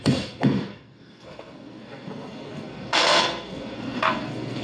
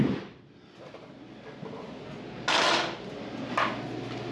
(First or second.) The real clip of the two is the second